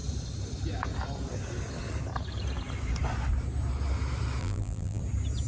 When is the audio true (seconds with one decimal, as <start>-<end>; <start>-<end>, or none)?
0.0-4.4; 5.0-5.5

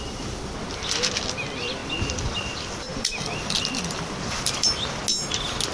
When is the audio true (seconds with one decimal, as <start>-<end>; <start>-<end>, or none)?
0.0-2.9; 5.0-5.7

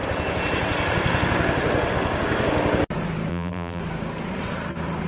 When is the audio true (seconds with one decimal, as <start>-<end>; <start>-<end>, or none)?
0.0-3.3; 3.8-5.1

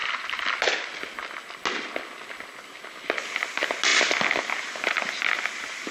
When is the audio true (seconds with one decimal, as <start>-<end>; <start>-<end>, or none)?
0.0-5.9

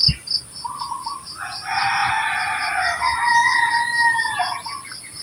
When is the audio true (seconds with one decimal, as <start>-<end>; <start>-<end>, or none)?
0.0-5.2

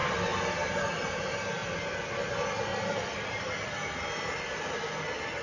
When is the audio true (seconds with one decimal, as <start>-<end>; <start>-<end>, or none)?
0.0-5.4